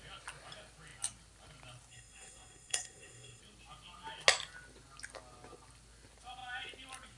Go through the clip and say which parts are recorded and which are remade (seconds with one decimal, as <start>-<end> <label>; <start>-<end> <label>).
0.0-1.9 recorded; 1.9-3.4 remade; 3.4-7.2 recorded